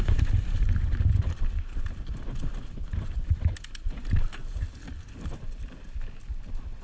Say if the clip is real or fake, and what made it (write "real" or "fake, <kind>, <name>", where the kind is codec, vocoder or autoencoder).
real